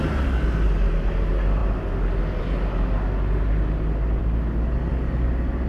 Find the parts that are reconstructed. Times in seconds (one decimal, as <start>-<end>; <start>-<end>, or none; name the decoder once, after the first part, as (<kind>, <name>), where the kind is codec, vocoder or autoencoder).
none